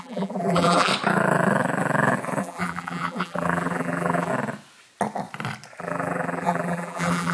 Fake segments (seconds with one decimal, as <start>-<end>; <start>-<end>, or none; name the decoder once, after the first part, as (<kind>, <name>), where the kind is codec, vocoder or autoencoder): 0.0-0.9 (vocoder, BigVGAN v2); 2.4-4.3; 5.8-7.3